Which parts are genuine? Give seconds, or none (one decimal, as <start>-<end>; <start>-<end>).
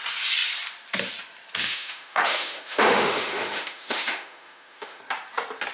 0.0-1.6; 5.0-5.7